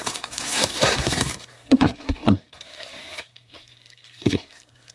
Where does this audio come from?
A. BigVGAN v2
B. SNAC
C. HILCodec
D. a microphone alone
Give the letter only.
B